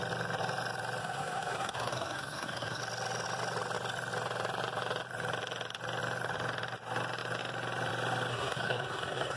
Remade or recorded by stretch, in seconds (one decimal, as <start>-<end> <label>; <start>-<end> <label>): 0.0-1.0 recorded; 1.0-2.8 remade; 2.8-8.3 recorded; 8.3-9.4 remade